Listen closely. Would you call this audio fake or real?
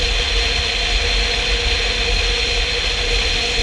real